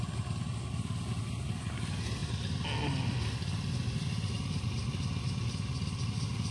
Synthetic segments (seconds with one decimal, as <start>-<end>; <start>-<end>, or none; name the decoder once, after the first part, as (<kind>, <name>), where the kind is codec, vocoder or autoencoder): none